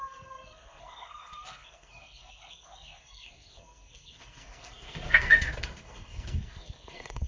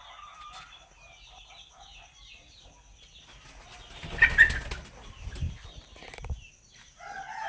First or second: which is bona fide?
second